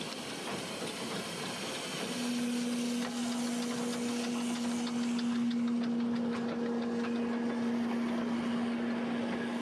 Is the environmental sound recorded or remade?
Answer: recorded